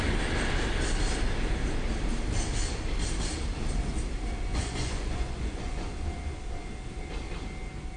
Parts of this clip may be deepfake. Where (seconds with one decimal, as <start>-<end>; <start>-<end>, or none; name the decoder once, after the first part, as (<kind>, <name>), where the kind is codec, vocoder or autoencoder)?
4.5-5.9 (vocoder, Vocos)